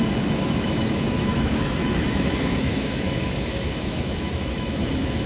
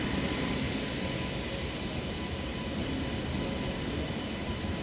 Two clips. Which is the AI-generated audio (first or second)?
first